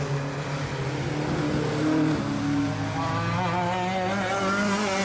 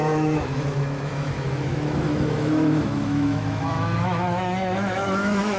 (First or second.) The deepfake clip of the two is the second